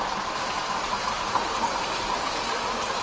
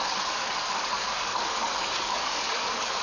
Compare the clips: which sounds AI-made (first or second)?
second